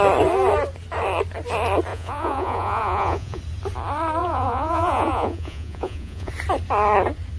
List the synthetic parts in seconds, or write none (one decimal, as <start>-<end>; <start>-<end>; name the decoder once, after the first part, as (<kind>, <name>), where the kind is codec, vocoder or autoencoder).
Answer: 1.9-3.4 (vocoder, Vocos); 4.2-6.3